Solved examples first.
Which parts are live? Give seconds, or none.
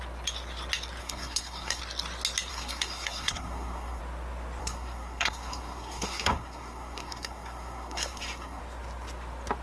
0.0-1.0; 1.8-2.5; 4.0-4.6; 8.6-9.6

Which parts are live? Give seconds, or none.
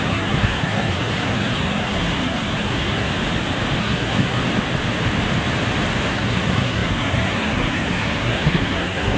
3.1-3.8; 4.4-6.1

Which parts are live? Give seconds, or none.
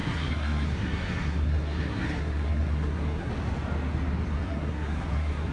3.3-4.3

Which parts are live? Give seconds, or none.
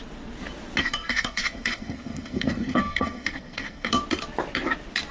0.0-0.8; 3.9-5.1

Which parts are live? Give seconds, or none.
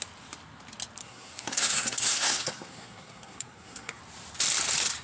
0.0-1.0; 4.0-5.0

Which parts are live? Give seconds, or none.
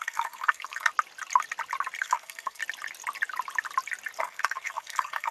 0.9-2.0; 2.6-4.2